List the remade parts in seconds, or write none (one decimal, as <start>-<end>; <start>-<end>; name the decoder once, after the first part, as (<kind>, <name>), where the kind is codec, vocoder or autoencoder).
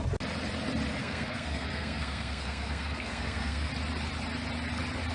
1.0-3.7 (codec, SNAC)